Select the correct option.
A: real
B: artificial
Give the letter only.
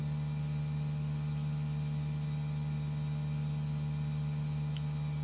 A